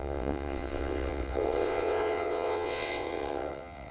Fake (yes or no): yes